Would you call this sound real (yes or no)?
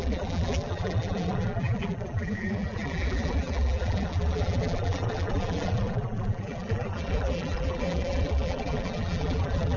no